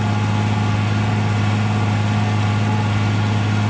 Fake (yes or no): no